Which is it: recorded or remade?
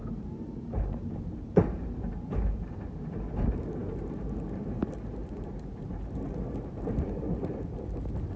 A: remade